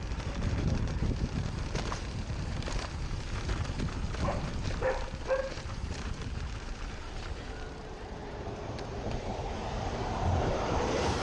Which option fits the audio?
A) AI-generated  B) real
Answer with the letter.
A